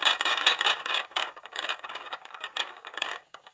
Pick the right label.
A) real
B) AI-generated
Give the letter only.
B